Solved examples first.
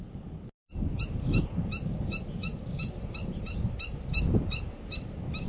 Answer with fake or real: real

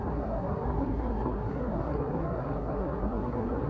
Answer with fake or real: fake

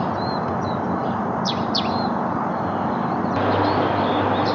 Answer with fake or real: real